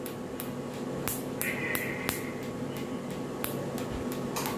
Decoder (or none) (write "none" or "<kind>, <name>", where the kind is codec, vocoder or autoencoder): none